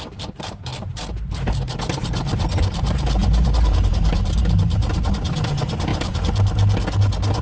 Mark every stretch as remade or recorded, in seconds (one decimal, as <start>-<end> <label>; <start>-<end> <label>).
0.0-5.9 remade; 5.9-7.4 recorded